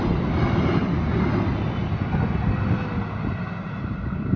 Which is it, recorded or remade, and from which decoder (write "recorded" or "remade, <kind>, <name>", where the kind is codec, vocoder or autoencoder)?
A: recorded